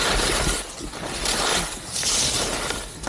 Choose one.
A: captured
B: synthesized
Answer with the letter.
A